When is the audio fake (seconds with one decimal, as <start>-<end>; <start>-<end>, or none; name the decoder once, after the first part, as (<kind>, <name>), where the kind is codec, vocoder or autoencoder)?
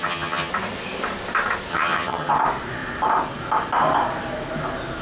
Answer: 0.0-0.5 (vocoder, HiFi-GAN); 1.7-2.3